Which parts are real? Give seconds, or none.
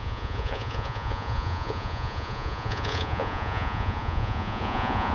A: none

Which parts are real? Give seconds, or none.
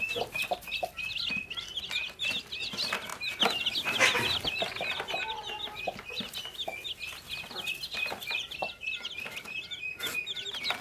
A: 0.0-10.8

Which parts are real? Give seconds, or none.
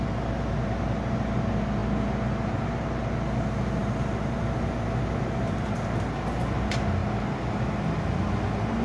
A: 0.0-8.8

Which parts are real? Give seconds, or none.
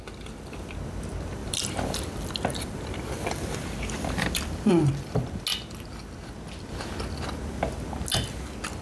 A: 0.0-1.4; 4.7-8.8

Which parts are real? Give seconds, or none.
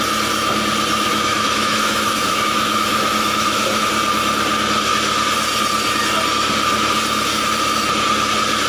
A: 0.0-1.1; 3.9-8.7